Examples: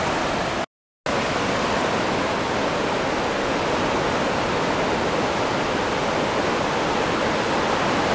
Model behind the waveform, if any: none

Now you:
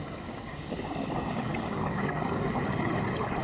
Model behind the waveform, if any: codec, DAC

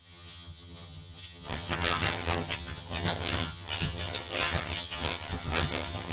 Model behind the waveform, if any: vocoder, HiFi-GAN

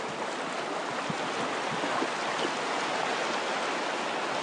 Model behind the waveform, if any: none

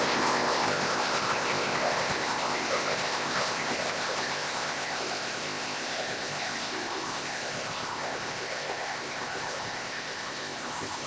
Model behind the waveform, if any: codec, ZipCodec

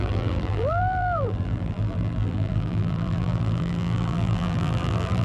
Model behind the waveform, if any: vocoder, BigVGAN v2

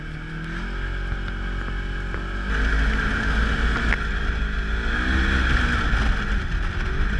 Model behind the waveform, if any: none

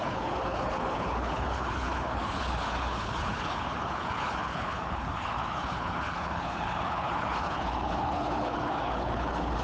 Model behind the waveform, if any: codec, HILCodec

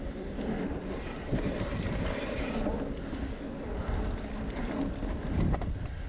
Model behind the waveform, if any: none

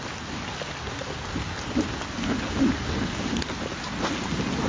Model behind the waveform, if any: none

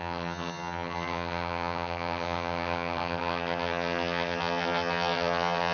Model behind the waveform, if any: vocoder, HiFi-GAN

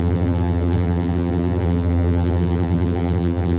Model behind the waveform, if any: vocoder, BigVGAN v2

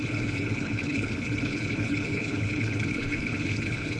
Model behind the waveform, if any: codec, HILCodec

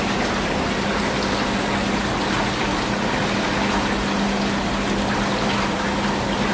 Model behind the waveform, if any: none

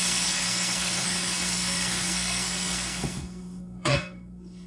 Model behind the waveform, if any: codec, SNAC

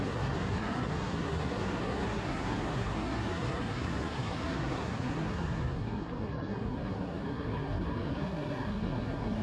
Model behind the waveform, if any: codec, SNAC